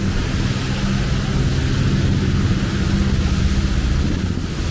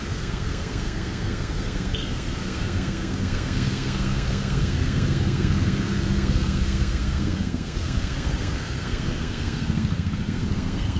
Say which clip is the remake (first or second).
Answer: second